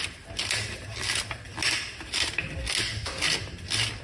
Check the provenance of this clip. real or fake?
real